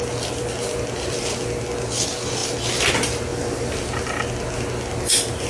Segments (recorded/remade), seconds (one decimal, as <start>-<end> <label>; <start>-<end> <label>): 0.0-5.5 recorded